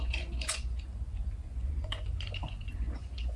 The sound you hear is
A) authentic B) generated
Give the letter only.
B